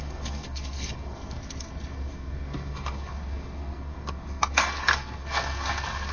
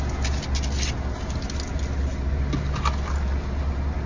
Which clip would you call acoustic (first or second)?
second